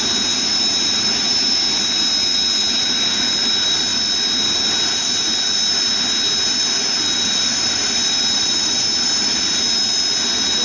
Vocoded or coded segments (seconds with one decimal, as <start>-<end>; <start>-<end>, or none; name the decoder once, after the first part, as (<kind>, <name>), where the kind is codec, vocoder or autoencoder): none